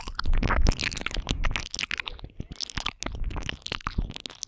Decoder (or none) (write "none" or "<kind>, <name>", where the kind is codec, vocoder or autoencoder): none